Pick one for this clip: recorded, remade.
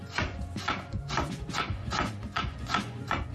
remade